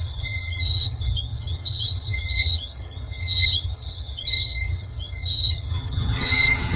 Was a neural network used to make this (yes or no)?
yes